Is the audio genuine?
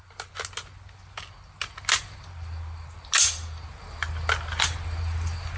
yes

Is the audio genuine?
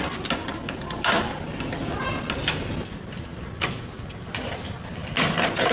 yes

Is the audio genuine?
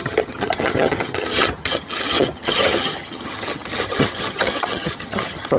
no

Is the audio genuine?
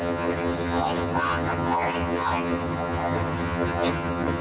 no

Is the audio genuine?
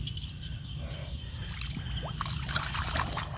yes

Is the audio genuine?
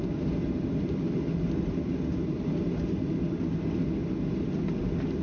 yes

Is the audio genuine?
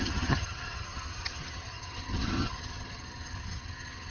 no